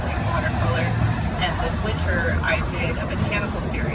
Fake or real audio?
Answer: fake